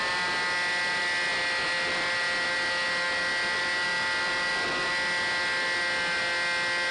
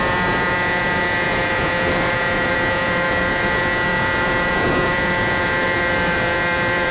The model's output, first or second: second